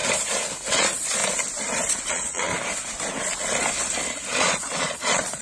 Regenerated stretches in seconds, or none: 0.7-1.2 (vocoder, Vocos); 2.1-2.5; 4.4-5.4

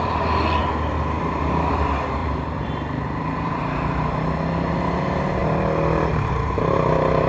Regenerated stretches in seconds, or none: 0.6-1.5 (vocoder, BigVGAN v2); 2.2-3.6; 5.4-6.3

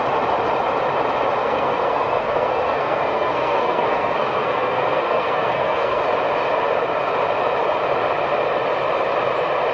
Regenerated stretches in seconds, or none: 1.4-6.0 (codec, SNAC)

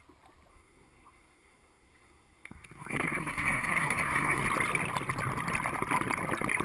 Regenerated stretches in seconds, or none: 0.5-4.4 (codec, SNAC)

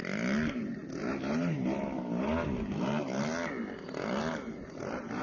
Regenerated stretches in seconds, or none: none

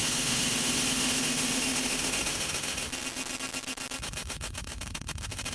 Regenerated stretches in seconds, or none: 0.0-2.9 (autoencoder, DAC-VAE); 4.0-5.5

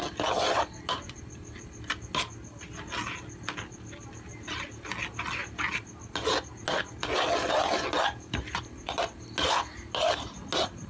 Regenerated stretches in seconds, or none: none